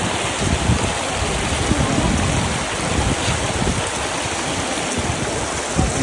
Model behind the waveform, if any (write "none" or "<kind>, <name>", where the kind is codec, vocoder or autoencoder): none